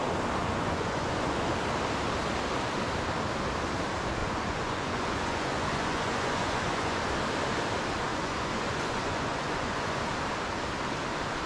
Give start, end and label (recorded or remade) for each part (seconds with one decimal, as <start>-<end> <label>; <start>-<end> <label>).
0.0-0.4 recorded; 0.4-1.5 remade; 1.5-4.2 recorded; 4.2-7.0 remade; 7.0-8.1 recorded; 8.1-10.0 remade; 10.0-11.5 recorded